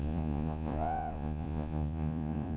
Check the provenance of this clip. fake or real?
fake